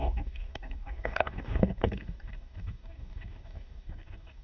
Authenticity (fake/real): fake